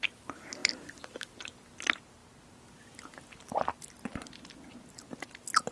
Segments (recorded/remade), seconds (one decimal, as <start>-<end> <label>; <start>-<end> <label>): 0.0-0.6 recorded; 0.6-1.3 remade; 1.3-5.7 recorded